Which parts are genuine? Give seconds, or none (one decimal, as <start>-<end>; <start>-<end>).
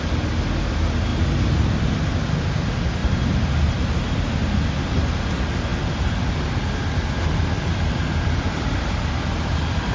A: 0.0-3.0; 4.0-9.9